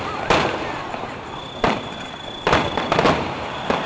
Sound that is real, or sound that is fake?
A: fake